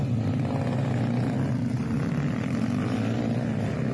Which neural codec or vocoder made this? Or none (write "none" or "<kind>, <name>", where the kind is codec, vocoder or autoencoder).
none